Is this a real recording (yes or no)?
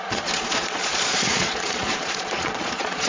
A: no